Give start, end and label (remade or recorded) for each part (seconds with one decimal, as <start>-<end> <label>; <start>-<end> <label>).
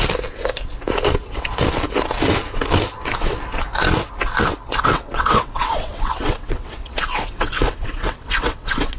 0.0-4.8 recorded; 4.8-9.0 remade